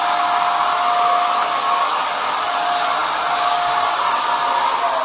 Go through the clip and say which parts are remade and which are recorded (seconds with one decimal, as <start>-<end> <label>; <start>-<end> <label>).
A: 0.0-5.0 recorded